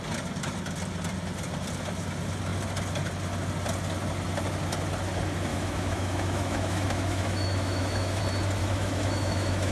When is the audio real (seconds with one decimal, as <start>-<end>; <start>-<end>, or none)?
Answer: 0.0-5.5; 8.2-8.6